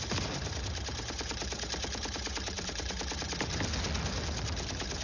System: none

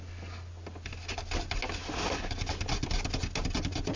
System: none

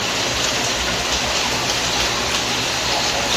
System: none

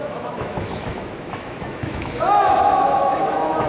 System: autoencoder, DAC-VAE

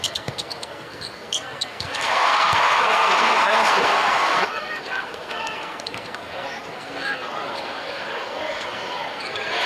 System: codec, SNAC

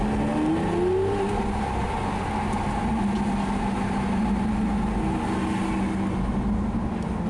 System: none